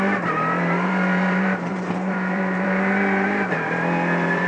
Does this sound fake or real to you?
fake